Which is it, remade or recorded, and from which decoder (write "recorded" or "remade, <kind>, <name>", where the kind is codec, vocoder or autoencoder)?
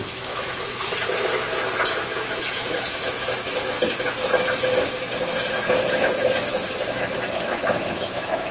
remade, autoencoder, DAC-VAE